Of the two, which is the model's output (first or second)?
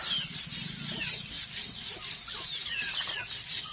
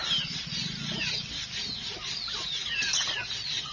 first